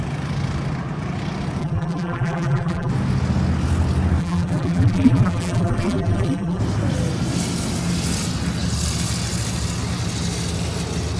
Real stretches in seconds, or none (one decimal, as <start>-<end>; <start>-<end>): 0.0-1.6; 2.9-4.2; 6.6-11.2